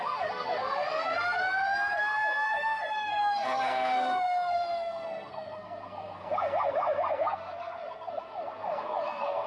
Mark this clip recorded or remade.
remade